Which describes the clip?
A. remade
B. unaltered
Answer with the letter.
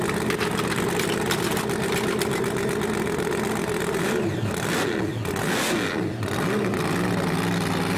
B